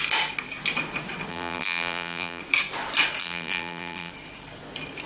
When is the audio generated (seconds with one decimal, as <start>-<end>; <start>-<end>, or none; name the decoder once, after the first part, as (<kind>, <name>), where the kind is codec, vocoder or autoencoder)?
1.3-2.4 (vocoder, BigVGAN v2); 3.2-4.1